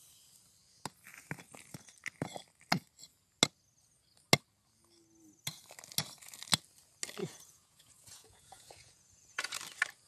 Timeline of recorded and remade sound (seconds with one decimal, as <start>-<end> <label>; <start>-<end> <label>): 0.0-7.2 recorded; 7.2-9.6 remade; 9.6-10.1 recorded